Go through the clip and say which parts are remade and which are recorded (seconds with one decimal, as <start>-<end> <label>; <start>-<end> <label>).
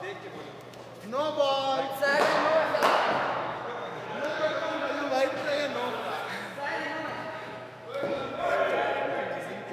0.0-2.1 recorded; 2.1-6.8 remade; 6.8-7.2 recorded; 7.2-8.4 remade; 8.4-9.7 recorded